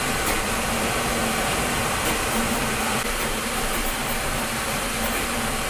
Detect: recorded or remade remade